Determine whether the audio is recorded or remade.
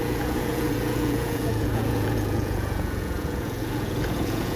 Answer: remade